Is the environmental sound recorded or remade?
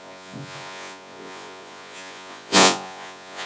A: remade